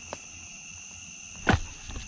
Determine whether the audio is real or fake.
real